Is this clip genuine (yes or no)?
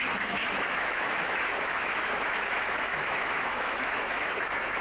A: no